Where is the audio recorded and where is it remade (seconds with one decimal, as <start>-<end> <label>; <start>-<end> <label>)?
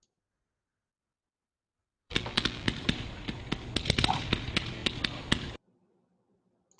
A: 0.0-1.8 recorded; 1.8-2.7 remade; 2.7-6.8 recorded